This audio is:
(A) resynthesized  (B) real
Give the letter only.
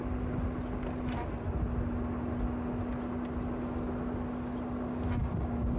B